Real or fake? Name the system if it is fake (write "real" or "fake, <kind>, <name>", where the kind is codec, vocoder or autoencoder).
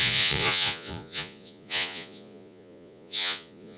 fake, vocoder, Vocos